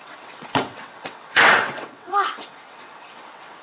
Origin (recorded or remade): remade